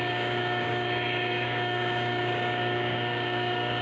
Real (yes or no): no